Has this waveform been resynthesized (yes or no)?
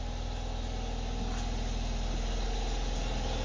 no